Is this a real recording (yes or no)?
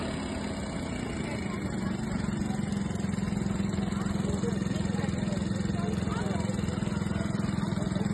yes